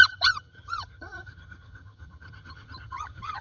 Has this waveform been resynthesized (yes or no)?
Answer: yes